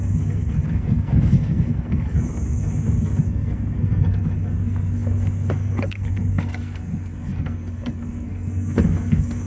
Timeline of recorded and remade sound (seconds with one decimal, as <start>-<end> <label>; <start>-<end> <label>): 0.0-9.5 remade